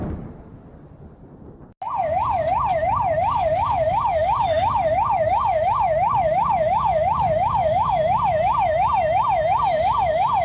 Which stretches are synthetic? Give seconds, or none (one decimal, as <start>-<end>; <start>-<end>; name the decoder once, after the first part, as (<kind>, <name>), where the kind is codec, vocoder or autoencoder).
2.7-7.9 (autoencoder, DAC-VAE)